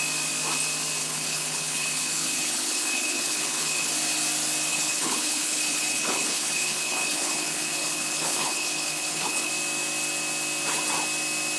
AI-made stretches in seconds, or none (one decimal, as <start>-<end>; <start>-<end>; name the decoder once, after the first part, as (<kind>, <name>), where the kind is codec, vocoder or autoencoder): 1.0-3.9 (codec, HILCodec); 4.7-9.5